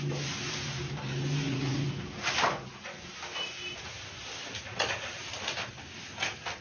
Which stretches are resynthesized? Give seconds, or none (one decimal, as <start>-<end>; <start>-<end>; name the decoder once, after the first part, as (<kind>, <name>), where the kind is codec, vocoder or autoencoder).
none

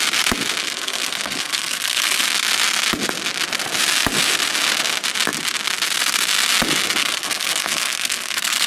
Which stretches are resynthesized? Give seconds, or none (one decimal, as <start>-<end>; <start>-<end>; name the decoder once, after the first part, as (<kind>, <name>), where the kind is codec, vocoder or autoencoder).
0.6-2.2 (codec, SNAC); 7.0-8.7

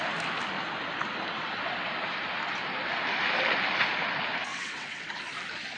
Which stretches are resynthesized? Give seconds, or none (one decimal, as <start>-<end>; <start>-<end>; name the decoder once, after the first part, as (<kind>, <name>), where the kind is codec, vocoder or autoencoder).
4.5-5.1 (vocoder, WaveNeXt)

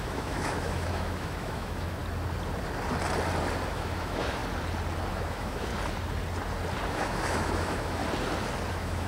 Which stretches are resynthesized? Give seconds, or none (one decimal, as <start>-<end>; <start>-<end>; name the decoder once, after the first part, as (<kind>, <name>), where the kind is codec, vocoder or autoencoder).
0.0-2.0 (autoencoder, DAC-VAE); 3.7-4.4; 5.1-5.7; 6.9-8.0; 8.7-9.1

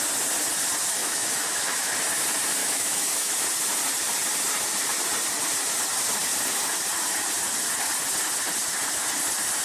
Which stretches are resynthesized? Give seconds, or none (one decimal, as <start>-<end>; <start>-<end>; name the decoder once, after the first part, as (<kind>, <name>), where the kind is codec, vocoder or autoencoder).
1.0-1.9 (autoencoder, DAC-VAE); 2.6-3.3

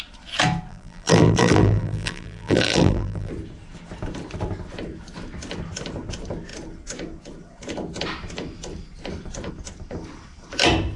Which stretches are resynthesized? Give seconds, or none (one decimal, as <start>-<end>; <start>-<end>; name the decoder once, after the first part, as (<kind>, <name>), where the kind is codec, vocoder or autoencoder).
0.7-3.3 (vocoder, BigVGAN v2)

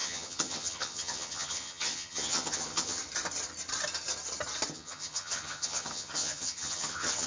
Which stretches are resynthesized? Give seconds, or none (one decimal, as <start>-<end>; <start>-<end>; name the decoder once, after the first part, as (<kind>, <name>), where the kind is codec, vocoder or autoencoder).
0.0-3.0 (vocoder, HiFi-GAN); 4.7-7.3

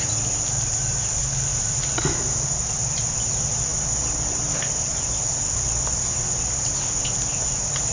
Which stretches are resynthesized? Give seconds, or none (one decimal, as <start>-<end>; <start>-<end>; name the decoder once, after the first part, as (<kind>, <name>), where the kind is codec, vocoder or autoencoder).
none